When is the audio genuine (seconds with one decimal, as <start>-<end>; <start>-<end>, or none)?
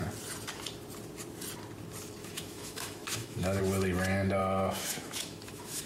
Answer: 0.0-2.2; 3.6-4.4